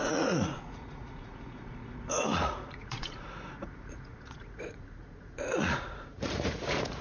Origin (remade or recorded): remade